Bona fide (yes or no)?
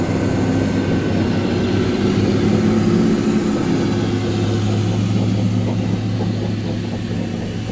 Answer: yes